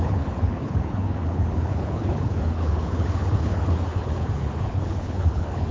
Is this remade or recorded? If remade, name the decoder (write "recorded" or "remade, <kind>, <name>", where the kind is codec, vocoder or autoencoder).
remade, codec, HILCodec